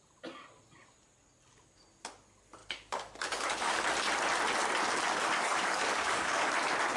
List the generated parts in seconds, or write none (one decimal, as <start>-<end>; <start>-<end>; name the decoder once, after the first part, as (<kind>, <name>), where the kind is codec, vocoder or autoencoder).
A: 2.6-3.8 (codec, DAC); 5.2-6.5